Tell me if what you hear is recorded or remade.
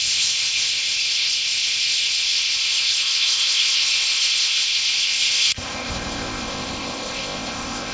remade